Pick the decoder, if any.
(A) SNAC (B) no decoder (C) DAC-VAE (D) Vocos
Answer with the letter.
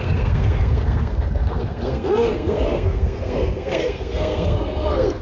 A